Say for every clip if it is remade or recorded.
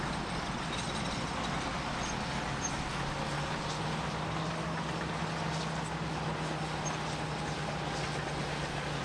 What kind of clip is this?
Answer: recorded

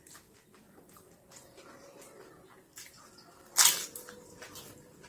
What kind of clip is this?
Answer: recorded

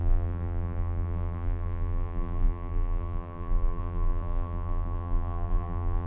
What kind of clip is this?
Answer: remade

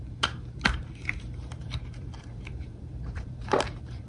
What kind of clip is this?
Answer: remade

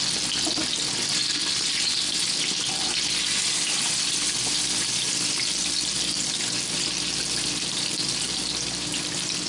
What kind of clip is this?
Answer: recorded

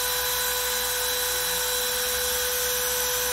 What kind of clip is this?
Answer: recorded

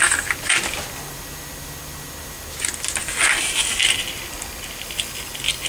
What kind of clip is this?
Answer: recorded